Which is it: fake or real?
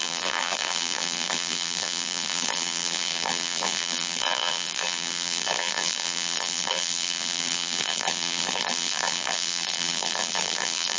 fake